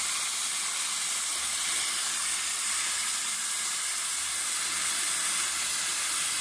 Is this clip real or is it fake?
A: real